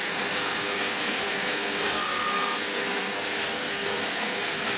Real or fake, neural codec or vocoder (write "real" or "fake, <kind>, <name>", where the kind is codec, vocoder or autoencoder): fake, codec, SNAC